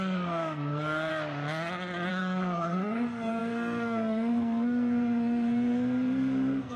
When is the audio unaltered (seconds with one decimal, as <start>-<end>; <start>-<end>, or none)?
1.1-2.1